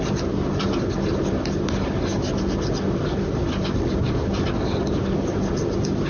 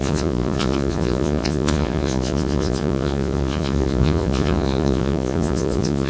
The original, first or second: first